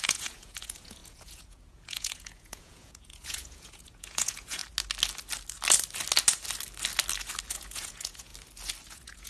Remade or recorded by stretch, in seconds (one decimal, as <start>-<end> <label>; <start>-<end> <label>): 0.0-4.6 remade; 4.6-7.5 recorded; 7.5-8.3 remade; 8.3-8.9 recorded; 8.9-9.3 remade